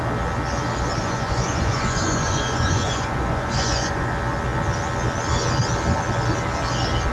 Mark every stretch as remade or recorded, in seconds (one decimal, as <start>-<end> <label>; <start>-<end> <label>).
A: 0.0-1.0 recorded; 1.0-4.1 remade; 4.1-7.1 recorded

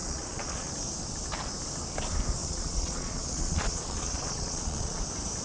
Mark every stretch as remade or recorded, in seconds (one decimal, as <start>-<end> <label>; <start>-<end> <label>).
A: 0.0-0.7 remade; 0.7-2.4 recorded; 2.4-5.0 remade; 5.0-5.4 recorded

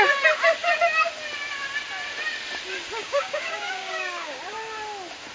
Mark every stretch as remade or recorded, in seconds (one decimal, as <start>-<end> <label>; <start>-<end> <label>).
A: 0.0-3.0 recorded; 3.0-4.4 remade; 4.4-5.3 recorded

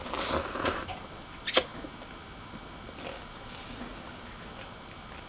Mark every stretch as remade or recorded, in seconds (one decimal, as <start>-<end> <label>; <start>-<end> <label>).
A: 0.0-5.3 recorded

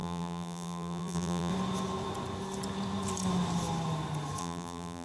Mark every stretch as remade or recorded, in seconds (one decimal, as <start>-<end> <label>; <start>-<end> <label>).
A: 0.0-1.5 remade; 1.5-4.4 recorded; 4.4-5.0 remade

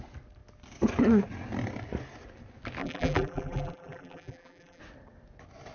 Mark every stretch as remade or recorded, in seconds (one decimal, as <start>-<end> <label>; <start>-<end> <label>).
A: 0.0-2.8 recorded; 2.8-4.8 remade; 4.8-5.7 recorded

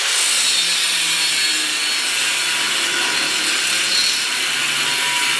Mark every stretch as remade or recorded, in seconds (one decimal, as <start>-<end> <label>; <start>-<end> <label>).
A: 0.0-5.4 recorded